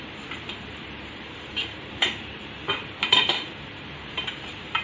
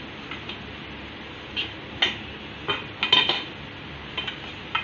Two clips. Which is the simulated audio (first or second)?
first